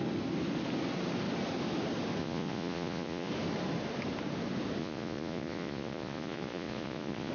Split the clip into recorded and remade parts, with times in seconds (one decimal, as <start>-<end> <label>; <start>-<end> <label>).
0.0-2.2 recorded; 2.2-3.3 remade; 3.3-4.8 recorded; 4.8-7.3 remade